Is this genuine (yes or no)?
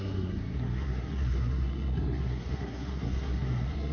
no